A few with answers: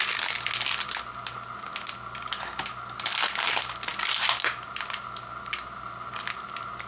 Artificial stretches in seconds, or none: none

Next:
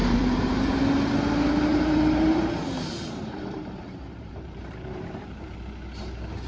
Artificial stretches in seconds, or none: 0.0-0.8; 1.7-5.6